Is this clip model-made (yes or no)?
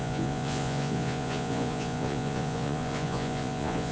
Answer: yes